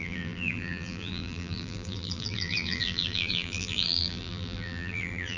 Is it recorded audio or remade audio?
remade